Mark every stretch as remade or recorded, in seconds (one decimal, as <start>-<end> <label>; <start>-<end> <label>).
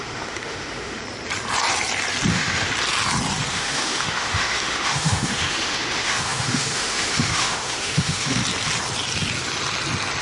0.0-1.0 remade; 1.0-2.3 recorded; 2.3-2.7 remade; 2.7-3.5 recorded; 3.5-8.4 remade; 8.4-10.2 recorded